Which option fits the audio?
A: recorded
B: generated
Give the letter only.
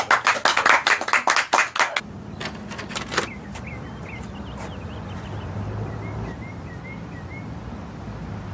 A